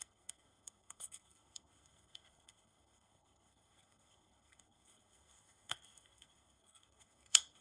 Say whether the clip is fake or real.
fake